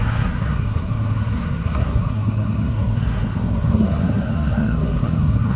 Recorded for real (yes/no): no